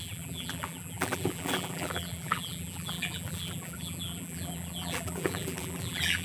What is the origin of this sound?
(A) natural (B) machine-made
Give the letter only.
B